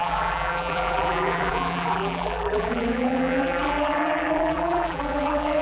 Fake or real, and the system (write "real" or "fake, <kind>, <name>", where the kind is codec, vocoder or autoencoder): fake, vocoder, BigVGAN v2